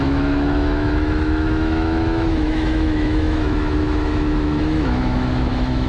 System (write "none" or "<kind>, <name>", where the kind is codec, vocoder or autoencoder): autoencoder, DAC-VAE